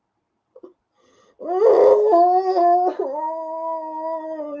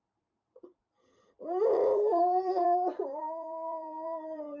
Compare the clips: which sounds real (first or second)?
first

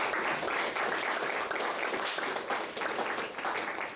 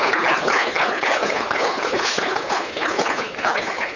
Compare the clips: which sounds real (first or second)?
first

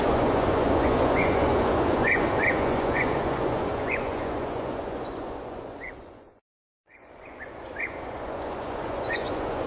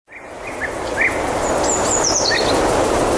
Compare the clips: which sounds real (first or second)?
second